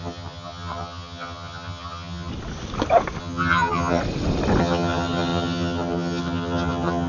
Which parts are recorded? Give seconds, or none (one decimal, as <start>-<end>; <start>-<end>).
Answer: 2.3-3.2; 4.0-4.6